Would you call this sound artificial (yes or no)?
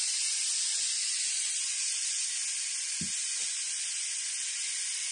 no